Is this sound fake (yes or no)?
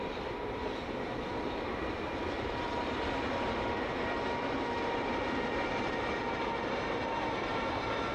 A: yes